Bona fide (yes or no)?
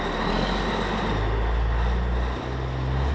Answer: yes